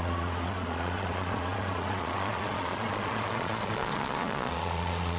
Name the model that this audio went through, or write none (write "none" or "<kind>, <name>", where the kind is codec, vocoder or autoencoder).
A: vocoder, Vocos